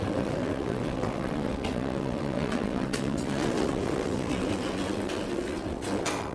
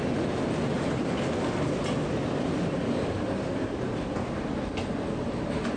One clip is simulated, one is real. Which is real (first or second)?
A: second